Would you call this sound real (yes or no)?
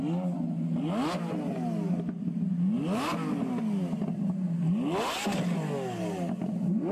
yes